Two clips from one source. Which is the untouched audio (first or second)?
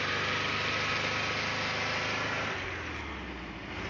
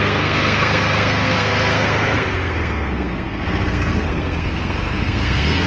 first